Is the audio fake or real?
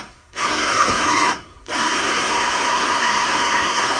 fake